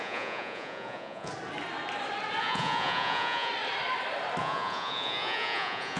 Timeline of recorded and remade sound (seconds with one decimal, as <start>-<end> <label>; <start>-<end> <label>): 0.0-1.3 remade; 1.3-2.4 recorded; 2.4-3.5 remade; 3.5-4.4 recorded; 4.4-6.0 remade